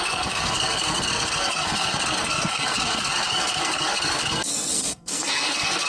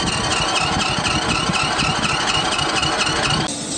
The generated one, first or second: first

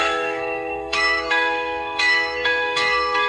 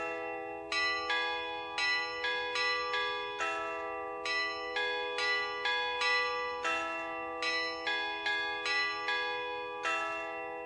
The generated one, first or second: first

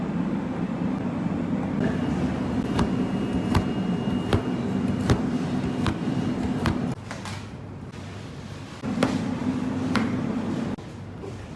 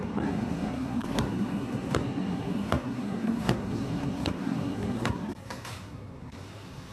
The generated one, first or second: second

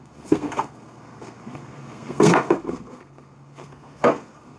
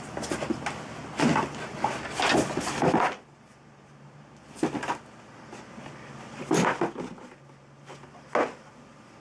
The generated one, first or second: first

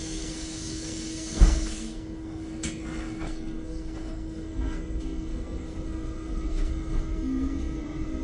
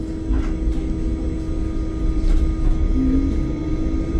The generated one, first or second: first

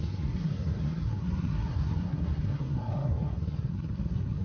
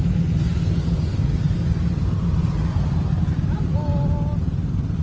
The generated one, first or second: first